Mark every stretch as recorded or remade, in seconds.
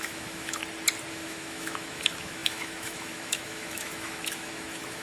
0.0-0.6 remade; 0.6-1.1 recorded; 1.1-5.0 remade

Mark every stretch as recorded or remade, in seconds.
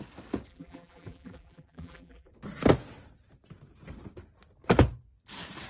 0.0-0.5 recorded; 0.5-2.3 remade; 2.3-5.7 recorded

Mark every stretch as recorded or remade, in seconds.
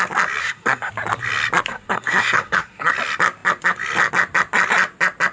0.0-0.4 recorded; 0.4-0.9 remade; 0.9-1.7 recorded; 1.7-2.9 remade; 2.9-5.3 recorded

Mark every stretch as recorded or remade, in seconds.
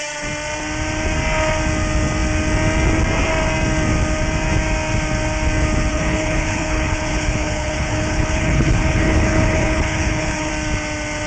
0.0-5.9 recorded; 5.9-10.5 remade; 10.5-11.3 recorded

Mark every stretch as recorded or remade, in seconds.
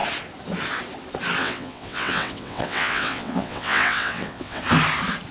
0.0-1.4 recorded; 1.4-4.6 remade; 4.6-5.3 recorded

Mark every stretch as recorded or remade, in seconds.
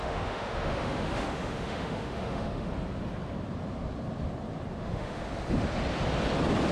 0.0-2.7 remade; 2.7-4.7 recorded; 4.7-5.2 remade; 5.2-6.7 recorded